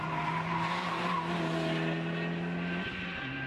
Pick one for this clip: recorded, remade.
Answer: recorded